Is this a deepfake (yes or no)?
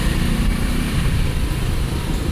yes